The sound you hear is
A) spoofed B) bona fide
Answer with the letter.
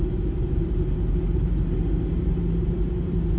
A